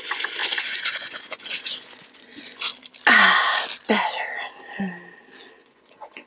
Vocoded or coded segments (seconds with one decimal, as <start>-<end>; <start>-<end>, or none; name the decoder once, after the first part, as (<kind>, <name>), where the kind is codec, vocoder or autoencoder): 0.0-2.7 (vocoder, Vocos); 5.6-6.3